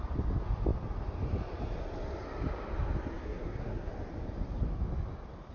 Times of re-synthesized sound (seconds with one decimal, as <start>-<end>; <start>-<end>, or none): 3.2-3.9